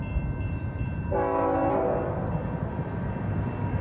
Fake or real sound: real